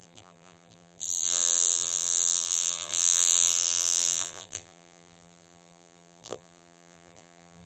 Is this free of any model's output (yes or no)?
no